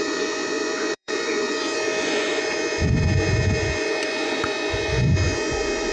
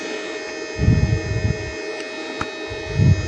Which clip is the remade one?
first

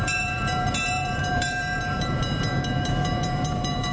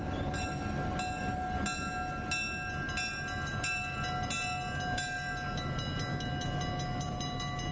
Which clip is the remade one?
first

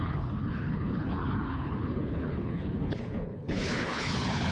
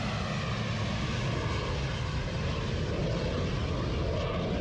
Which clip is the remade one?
first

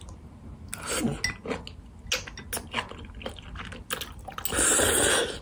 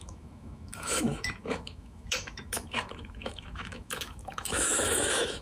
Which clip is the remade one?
second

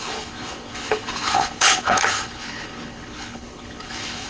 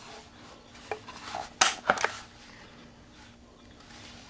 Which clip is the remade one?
first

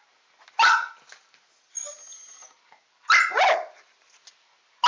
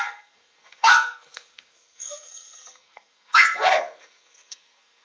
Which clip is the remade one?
second